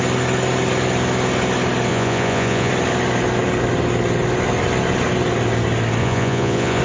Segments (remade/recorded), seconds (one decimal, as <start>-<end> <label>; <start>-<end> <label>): 0.0-1.9 recorded; 1.9-2.7 remade; 2.7-6.0 recorded; 6.0-6.8 remade